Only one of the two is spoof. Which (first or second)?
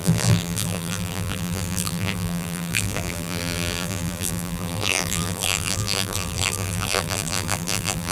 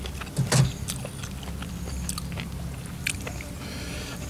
first